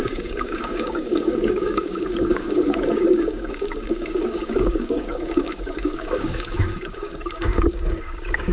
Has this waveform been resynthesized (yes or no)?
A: yes